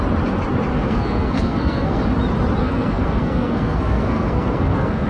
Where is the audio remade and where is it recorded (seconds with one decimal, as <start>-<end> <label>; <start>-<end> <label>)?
0.0-0.7 recorded; 0.7-2.0 remade; 2.0-2.6 recorded; 2.6-5.1 remade